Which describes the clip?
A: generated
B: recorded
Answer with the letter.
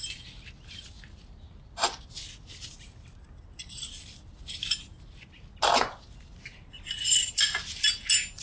B